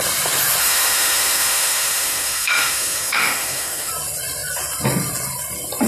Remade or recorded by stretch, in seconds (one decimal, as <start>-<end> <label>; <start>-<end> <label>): 0.0-0.6 recorded; 0.6-3.9 remade; 3.9-5.9 recorded